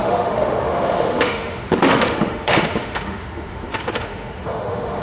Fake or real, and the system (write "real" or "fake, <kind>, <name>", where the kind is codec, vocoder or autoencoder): fake, autoencoder, DAC-VAE